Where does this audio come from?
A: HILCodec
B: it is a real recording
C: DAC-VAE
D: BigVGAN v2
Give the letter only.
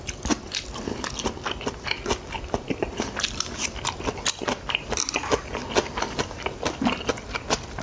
B